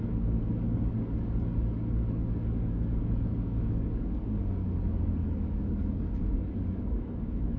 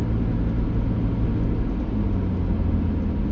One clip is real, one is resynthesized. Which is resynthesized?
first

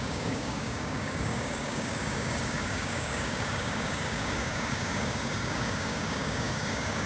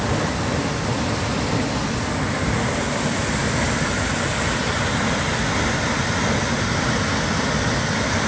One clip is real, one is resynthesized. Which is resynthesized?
first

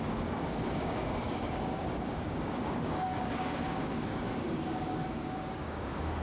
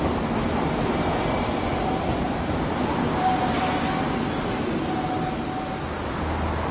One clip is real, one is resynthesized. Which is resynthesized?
first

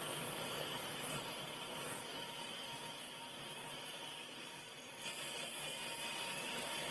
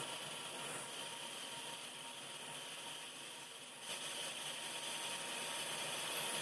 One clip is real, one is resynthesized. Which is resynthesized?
first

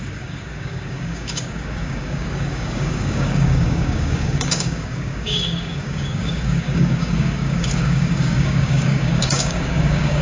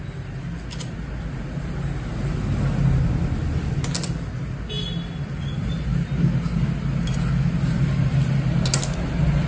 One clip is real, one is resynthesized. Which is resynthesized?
first